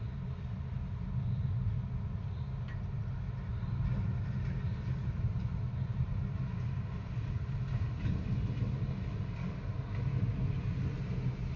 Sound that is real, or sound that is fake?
real